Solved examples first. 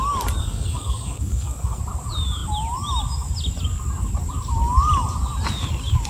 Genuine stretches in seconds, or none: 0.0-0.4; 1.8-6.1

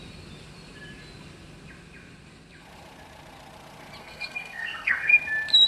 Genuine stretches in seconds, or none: 0.0-4.0; 5.1-5.7